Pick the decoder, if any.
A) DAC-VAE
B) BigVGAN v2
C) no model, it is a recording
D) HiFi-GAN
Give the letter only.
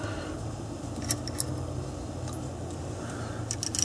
C